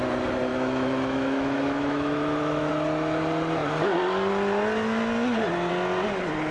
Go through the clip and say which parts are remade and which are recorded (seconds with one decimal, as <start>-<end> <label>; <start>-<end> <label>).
0.0-0.5 recorded; 0.5-2.7 remade; 2.7-6.5 recorded